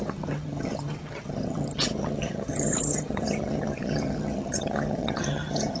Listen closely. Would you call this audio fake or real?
fake